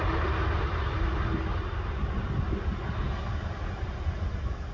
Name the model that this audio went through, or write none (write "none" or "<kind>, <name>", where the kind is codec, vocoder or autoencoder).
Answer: none